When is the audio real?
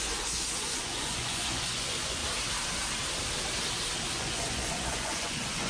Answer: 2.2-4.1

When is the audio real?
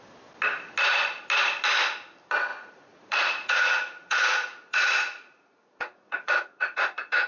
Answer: 0.0-2.5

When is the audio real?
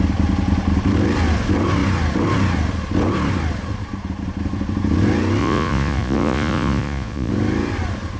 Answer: 0.0-5.4; 7.3-8.2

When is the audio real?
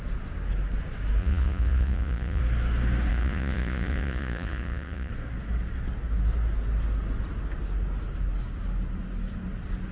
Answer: 0.0-1.2; 2.4-3.1; 5.1-9.9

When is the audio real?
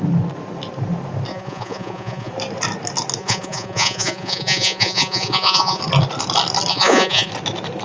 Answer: 0.0-1.3; 2.3-3.2; 5.8-6.7; 7.3-7.8